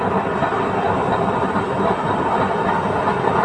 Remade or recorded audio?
recorded